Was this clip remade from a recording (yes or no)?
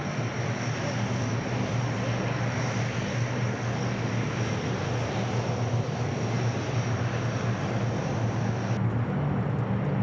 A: no